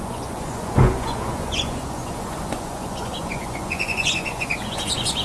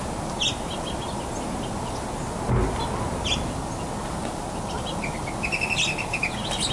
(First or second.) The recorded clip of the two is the second